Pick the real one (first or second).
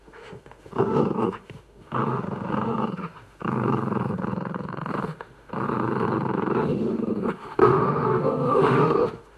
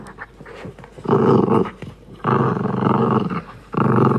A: second